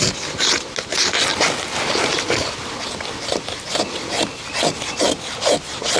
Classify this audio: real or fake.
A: real